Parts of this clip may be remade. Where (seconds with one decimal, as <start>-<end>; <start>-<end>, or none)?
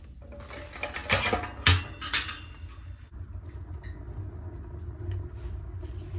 none